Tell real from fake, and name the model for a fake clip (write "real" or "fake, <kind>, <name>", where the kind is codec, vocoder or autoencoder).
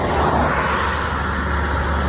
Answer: real